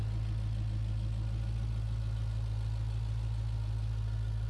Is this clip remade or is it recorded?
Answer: recorded